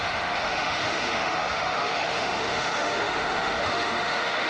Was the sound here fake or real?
fake